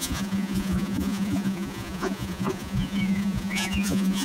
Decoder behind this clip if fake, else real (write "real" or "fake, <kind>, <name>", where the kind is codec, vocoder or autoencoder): fake, vocoder, Vocos